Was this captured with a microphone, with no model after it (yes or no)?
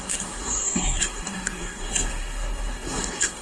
no